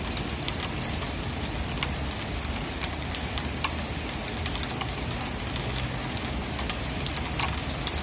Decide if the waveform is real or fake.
real